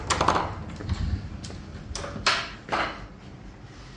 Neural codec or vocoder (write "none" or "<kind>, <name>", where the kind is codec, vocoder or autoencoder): none